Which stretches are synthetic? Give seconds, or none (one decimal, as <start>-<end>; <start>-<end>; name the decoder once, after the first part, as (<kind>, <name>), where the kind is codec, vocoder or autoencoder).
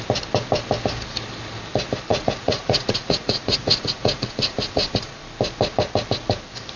2.1-5.2 (vocoder, Vocos)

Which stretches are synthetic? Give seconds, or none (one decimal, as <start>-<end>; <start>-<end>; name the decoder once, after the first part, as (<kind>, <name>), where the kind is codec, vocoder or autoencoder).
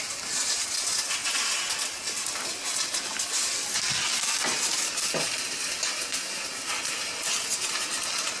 none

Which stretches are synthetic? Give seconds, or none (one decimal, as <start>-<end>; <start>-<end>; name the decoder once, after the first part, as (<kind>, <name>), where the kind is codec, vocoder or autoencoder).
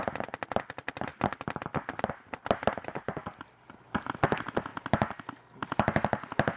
none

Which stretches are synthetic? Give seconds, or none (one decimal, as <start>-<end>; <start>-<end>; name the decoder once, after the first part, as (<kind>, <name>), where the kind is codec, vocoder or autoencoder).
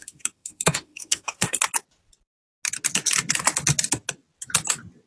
0.0-1.6 (autoencoder, DAC-VAE)